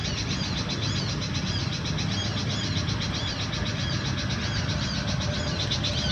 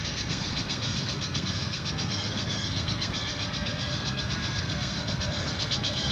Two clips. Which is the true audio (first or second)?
first